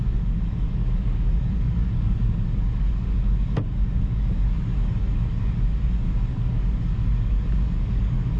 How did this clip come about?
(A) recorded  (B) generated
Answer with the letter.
B